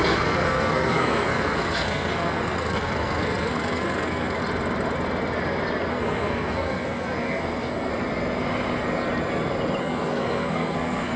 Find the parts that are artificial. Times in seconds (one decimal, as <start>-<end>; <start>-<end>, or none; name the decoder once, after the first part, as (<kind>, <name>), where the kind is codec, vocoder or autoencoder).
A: 0.0-4.4 (codec, SNAC); 5.9-7.9; 9.8-11.2